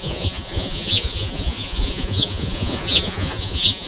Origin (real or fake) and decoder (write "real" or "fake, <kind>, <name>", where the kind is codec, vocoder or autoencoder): fake, vocoder, Vocos